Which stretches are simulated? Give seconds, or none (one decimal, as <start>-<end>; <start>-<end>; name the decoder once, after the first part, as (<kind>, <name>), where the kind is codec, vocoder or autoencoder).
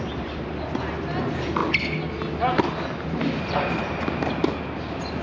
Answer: none